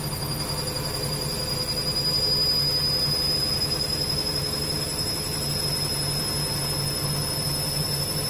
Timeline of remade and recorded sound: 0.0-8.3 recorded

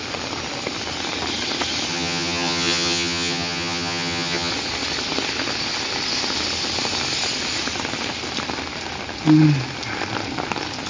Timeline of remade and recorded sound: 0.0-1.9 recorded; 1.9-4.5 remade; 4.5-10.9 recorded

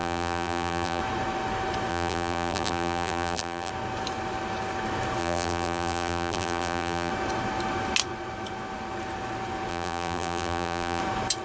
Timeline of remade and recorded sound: 0.0-1.0 remade; 1.0-1.9 recorded; 1.9-3.7 remade; 3.7-5.2 recorded; 5.2-7.1 remade; 7.1-9.7 recorded; 9.7-11.0 remade; 11.0-11.4 recorded

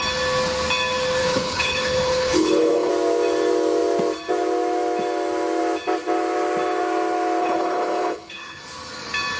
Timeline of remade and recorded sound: 0.0-1.2 recorded; 1.2-2.9 remade; 2.9-7.4 recorded; 7.4-8.6 remade; 8.6-9.4 recorded